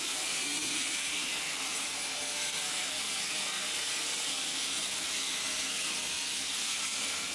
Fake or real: fake